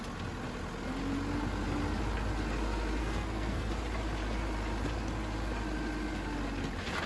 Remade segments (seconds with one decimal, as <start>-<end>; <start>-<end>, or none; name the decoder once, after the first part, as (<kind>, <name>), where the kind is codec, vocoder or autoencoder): 3.0-3.7 (codec, SNAC)